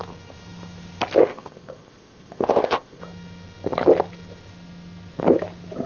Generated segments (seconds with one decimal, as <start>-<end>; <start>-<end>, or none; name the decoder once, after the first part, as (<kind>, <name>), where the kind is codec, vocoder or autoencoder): 1.2-3.0 (codec, ZipCodec)

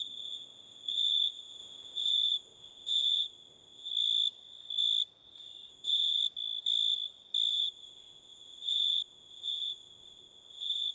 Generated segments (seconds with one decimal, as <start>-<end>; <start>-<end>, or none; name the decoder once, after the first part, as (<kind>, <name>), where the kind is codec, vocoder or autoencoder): 0.0-3.9 (codec, ZipCodec); 5.7-6.2; 7.5-10.9

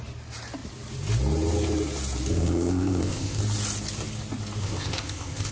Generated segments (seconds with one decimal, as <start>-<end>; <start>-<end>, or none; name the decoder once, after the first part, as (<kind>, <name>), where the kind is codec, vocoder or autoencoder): 2.3-3.4 (codec, ZipCodec); 4.6-5.5